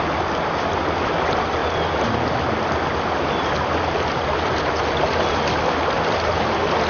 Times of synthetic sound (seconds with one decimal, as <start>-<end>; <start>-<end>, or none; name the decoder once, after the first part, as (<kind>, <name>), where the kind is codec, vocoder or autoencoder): none